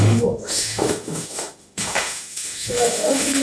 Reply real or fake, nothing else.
fake